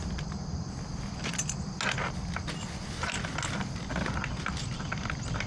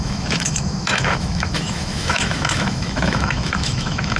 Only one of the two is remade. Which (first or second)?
second